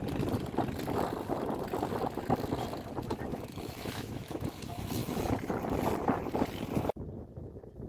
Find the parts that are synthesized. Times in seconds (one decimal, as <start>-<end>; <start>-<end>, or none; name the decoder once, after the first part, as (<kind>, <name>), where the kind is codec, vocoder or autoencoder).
3.3-4.6 (autoencoder, DAC-VAE)